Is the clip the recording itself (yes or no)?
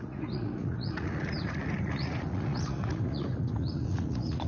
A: no